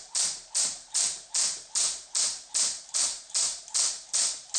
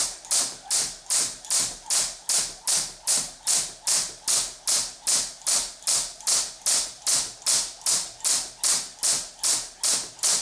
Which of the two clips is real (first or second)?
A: second